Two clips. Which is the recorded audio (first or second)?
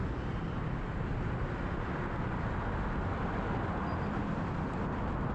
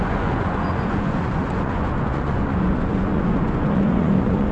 first